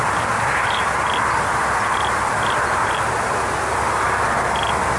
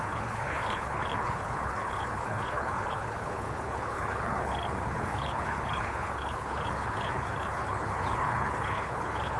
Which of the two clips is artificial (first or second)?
second